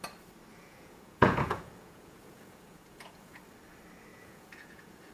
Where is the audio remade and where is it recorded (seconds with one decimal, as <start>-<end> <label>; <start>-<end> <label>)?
0.0-0.5 recorded; 0.5-3.4 remade; 3.4-4.1 recorded; 4.1-5.1 remade